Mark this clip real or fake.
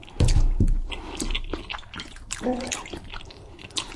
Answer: real